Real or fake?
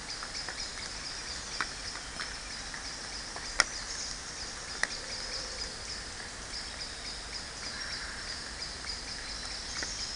real